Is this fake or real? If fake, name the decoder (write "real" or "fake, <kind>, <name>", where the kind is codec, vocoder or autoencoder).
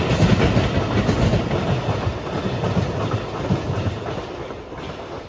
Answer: real